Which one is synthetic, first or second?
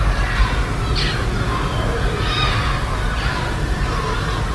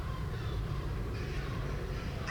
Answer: second